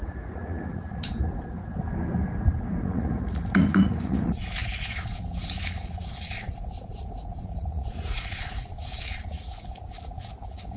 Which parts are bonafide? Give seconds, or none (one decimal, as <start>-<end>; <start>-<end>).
1.6-2.8